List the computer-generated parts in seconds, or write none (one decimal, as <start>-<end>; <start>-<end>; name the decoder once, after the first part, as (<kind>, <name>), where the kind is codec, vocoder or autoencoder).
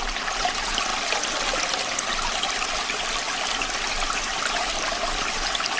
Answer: none